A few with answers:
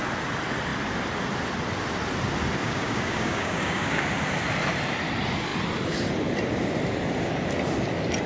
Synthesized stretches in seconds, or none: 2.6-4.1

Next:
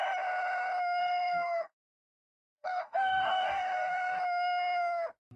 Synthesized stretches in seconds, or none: 1.0-4.2

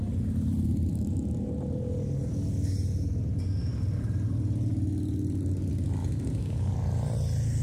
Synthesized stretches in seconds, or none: 0.9-1.5; 6.0-6.7

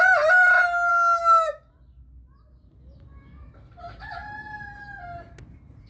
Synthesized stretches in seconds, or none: 0.9-1.7

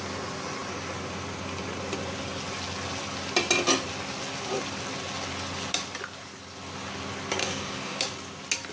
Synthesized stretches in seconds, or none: 7.4-8.0